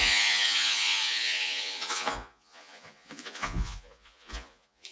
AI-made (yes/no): yes